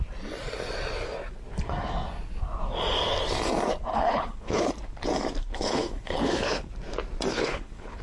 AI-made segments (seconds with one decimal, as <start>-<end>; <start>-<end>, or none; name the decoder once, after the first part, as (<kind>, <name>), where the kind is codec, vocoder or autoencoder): 3.9-4.7 (codec, HILCodec); 5.4-6.7; 7.3-8.0